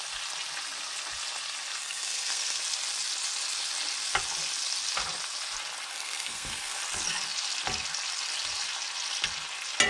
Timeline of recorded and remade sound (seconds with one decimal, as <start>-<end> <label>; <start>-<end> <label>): 0.0-1.8 recorded; 1.8-2.6 remade; 2.6-5.9 recorded; 5.9-6.8 remade; 6.8-9.9 recorded